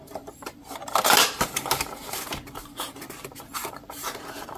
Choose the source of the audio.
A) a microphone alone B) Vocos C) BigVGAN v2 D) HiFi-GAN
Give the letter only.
C